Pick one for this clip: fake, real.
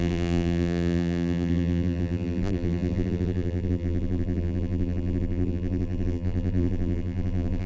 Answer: fake